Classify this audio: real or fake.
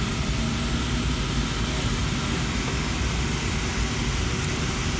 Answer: real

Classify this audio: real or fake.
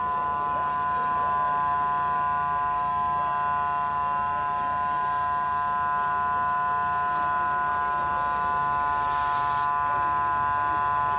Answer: real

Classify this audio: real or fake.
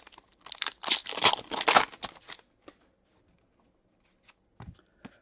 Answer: real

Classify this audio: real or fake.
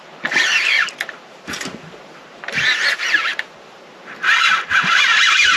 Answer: fake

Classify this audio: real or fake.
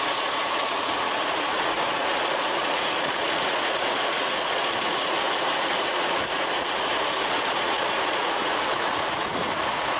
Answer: fake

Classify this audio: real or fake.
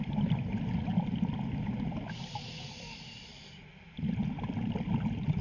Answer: real